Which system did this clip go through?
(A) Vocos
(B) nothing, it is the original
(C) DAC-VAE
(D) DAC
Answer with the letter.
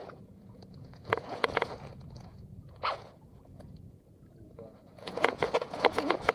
A